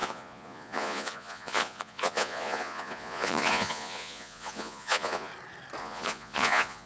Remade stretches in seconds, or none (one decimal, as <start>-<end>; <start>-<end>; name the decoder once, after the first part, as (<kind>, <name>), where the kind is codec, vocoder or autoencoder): 0.0-5.3 (vocoder, Vocos); 5.8-6.9